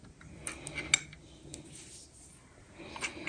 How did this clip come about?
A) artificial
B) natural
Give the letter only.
B